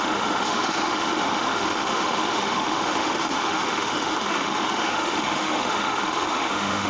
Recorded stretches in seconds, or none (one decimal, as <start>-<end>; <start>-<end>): none